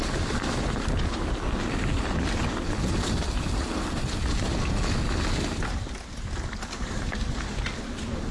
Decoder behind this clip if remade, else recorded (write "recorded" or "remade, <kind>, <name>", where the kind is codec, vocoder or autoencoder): recorded